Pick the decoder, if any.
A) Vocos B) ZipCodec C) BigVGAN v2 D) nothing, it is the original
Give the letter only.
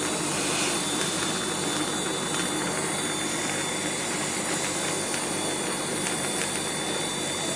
C